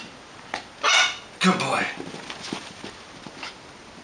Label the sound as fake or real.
real